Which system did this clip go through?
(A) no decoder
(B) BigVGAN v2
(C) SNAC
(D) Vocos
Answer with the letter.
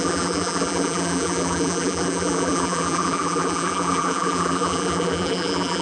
B